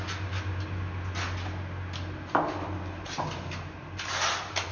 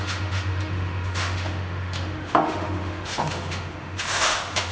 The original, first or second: first